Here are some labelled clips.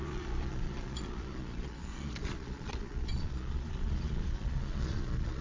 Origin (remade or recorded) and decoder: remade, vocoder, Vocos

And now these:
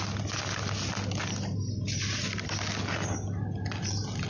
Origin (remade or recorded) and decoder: recorded